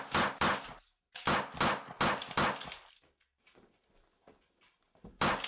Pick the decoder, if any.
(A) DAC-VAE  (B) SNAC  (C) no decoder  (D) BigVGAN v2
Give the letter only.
C